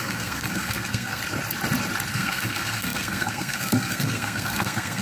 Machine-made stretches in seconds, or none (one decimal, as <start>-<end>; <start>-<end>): 0.0-1.2; 2.1-5.0